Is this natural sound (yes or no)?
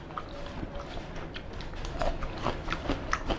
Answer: yes